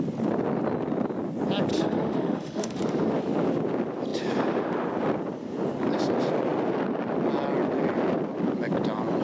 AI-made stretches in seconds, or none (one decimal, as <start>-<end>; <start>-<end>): 1.7-2.8